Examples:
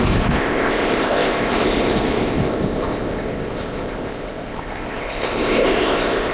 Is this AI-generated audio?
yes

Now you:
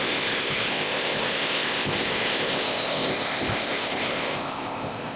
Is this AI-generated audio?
yes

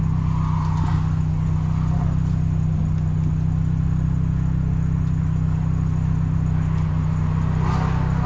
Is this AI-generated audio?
no